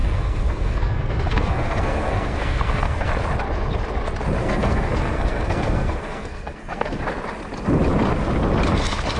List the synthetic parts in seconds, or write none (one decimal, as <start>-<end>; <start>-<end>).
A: 0.0-3.1; 4.4-7.0